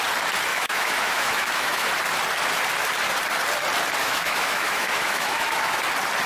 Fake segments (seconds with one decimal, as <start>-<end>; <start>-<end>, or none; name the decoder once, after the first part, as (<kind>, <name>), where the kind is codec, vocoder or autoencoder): 0.5-1.9 (autoencoder, DAC-VAE); 4.0-5.8